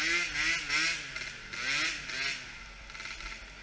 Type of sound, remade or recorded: recorded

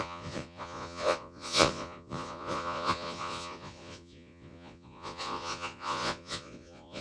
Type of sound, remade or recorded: remade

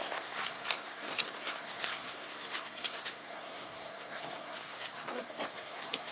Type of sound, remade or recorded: remade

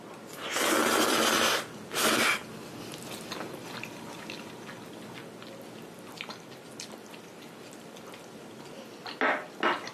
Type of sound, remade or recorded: recorded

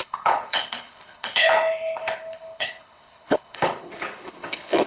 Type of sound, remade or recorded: remade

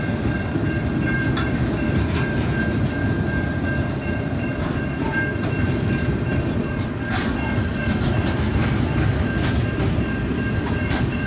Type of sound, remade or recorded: remade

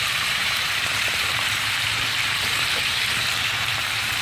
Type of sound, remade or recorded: remade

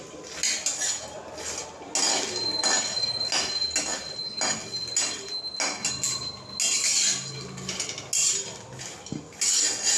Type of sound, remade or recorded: recorded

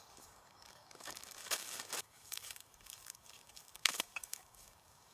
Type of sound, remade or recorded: remade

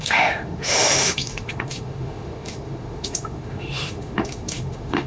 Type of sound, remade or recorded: remade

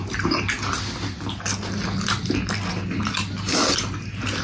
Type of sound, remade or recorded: recorded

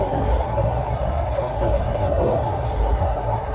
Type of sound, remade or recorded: remade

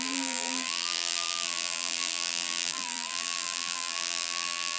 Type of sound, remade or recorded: remade